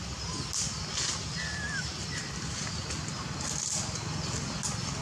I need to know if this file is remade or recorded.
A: recorded